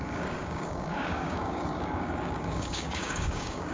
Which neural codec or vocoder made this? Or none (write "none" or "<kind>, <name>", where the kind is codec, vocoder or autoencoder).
codec, DAC